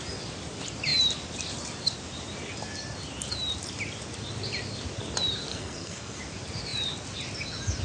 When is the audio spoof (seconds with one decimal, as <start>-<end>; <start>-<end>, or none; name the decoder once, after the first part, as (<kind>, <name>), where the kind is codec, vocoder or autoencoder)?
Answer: 5.5-6.2 (codec, SNAC)